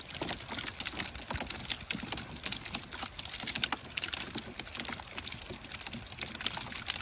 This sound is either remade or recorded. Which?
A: recorded